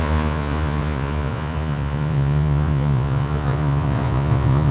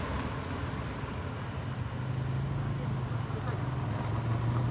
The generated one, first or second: first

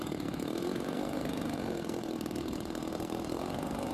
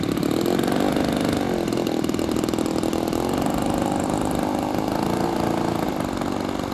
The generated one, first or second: first